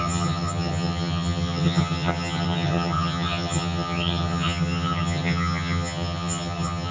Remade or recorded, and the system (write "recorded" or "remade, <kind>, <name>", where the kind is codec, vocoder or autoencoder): remade, vocoder, HiFi-GAN